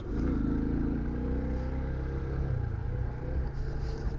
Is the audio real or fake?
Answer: real